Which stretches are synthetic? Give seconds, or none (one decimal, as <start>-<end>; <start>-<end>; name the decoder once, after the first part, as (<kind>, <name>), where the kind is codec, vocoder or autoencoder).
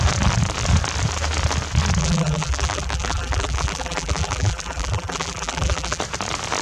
2.0-6.0 (vocoder, BigVGAN v2)